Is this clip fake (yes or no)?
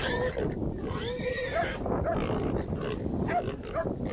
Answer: no